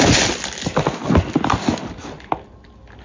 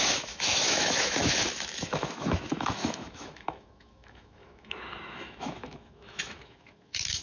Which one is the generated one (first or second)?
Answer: second